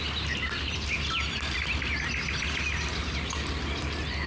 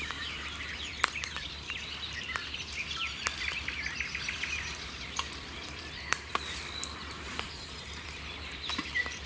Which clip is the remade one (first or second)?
second